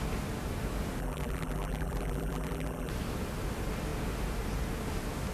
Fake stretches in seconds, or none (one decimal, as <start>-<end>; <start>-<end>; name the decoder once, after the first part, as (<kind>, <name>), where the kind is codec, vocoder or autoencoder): 1.0-2.9 (vocoder, BigVGAN v2)